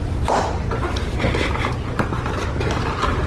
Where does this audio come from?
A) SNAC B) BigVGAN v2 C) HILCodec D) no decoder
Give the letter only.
D